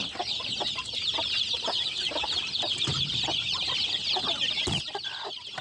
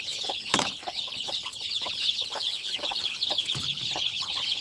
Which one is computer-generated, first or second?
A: second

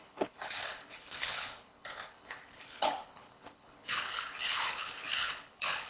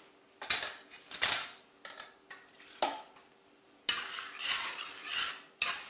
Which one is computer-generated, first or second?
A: first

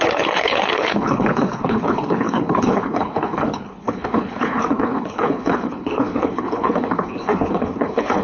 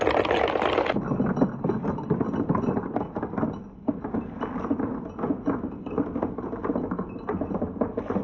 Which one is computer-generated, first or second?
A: first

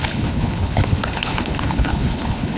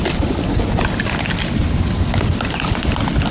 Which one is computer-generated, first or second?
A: first